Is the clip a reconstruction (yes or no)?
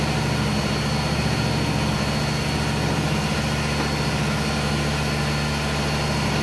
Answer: no